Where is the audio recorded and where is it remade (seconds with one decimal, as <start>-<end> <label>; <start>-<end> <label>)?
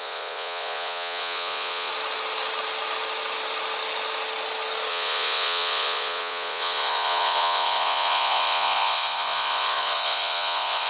0.0-1.9 remade; 1.9-4.9 recorded; 4.9-10.9 remade